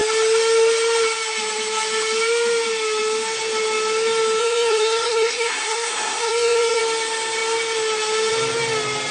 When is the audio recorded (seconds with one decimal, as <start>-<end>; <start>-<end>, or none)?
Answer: 0.0-4.4; 6.8-9.1